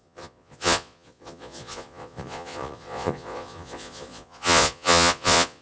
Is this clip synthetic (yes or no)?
yes